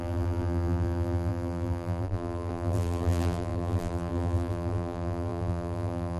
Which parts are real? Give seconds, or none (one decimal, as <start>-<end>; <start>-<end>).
none